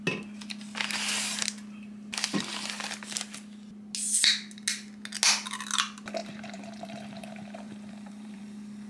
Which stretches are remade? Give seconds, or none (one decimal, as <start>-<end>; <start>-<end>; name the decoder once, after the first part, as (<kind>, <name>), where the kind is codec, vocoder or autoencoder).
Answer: 6.2-8.4 (vocoder, BigVGAN v2)